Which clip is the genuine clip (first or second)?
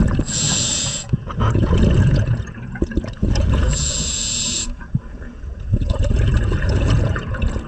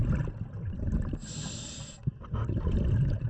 second